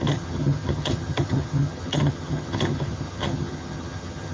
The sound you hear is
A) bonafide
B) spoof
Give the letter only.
B